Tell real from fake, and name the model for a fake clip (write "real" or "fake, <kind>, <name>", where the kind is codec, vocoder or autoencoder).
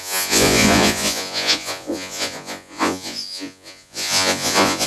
fake, vocoder, Vocos